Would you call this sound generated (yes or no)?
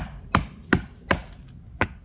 no